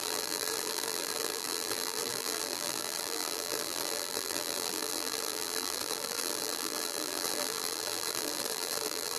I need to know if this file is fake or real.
fake